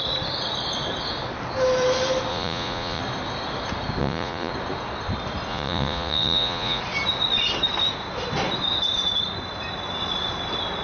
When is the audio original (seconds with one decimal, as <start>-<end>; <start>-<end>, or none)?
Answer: 0.0-2.3; 3.0-4.0; 4.5-5.5; 6.8-10.8